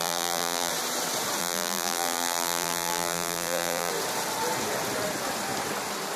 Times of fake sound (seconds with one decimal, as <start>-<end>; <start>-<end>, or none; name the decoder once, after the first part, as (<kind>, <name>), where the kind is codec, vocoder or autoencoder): 0.0-0.7 (vocoder, BigVGAN v2); 1.4-3.9